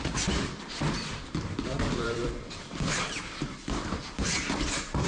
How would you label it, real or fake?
fake